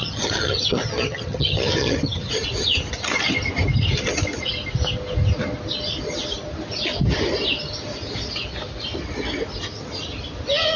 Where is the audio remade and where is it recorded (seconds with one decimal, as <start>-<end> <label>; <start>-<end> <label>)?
0.0-2.3 remade; 2.3-10.8 recorded